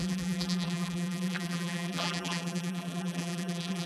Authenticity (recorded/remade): remade